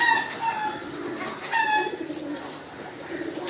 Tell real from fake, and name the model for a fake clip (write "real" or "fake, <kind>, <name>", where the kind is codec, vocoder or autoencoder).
real